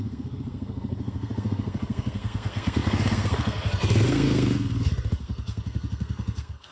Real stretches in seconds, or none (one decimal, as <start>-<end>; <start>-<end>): none